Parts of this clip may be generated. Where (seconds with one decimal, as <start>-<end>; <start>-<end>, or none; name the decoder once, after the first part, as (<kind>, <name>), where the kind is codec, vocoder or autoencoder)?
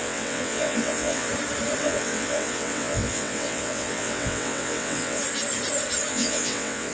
0.0-1.3 (vocoder, WaveNeXt); 1.8-5.2; 6.1-6.9